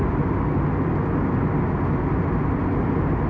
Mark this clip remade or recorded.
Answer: recorded